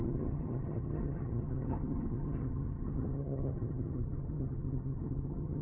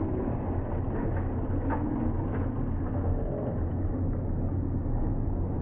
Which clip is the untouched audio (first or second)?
second